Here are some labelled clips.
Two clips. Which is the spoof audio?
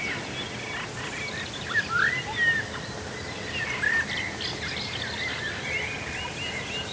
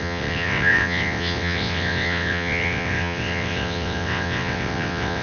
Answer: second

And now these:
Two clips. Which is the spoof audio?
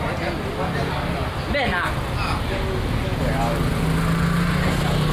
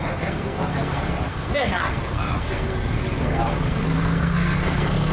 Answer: second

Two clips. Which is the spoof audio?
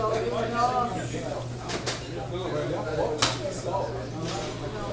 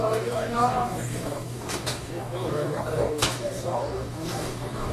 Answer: second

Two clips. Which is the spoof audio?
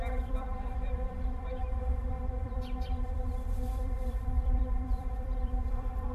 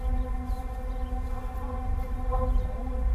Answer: first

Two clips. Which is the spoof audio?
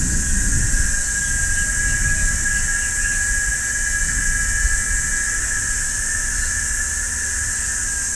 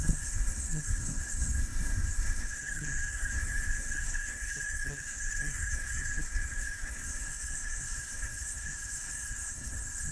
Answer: second